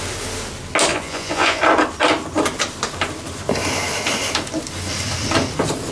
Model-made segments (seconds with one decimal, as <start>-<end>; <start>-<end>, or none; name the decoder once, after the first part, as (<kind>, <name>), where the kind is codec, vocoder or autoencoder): 0.9-1.6 (vocoder, Vocos)

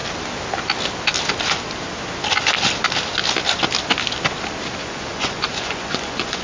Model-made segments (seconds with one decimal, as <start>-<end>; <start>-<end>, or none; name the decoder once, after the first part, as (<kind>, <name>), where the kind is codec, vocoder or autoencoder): 4.8-6.4 (vocoder, Vocos)

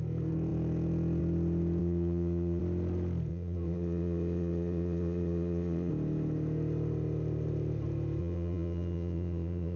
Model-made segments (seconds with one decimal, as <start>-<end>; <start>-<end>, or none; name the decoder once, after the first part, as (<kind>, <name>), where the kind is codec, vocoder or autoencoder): 1.8-2.6 (vocoder, Vocos); 3.3-5.9; 8.2-9.8

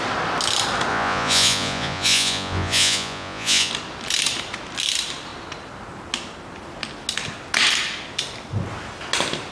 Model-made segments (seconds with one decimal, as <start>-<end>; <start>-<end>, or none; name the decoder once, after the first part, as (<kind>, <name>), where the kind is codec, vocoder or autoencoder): 0.9-3.7 (vocoder, Vocos)

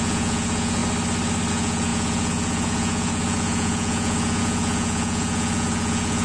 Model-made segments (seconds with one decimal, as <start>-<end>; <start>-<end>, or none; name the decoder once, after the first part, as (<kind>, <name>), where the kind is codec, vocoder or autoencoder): 0.0-0.8 (vocoder, Vocos); 1.5-6.2

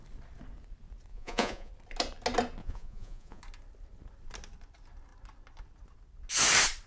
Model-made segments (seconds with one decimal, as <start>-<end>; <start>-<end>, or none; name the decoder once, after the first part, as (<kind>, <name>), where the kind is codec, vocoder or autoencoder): 1.1-1.7 (vocoder, Vocos); 2.6-3.4